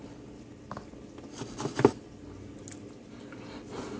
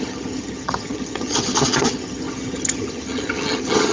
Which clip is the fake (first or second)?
second